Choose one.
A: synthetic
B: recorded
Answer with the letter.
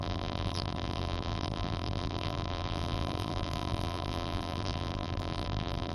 A